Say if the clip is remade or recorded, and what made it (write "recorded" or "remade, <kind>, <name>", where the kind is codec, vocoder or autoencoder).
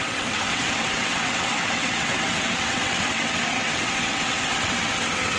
remade, vocoder, WaveNeXt